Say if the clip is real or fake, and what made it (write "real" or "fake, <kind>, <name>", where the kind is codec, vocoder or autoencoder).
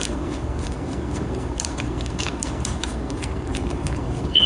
fake, codec, SNAC